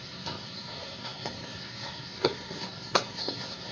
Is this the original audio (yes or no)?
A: no